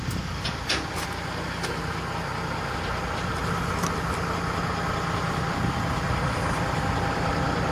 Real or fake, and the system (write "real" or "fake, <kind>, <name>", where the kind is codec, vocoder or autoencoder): real